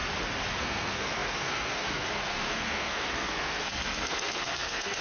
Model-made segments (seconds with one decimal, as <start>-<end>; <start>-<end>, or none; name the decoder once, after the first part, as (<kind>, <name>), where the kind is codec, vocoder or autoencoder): 0.6-5.0 (codec, SNAC)